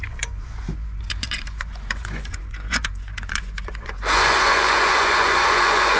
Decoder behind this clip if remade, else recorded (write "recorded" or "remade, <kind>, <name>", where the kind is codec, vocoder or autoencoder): remade, vocoder, Vocos